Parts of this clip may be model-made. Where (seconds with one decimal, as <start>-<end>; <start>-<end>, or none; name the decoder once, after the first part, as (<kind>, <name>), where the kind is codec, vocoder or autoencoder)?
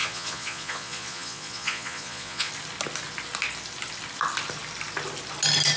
0.0-2.5 (vocoder, Vocos)